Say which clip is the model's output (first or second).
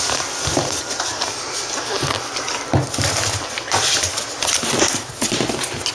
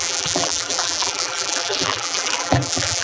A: second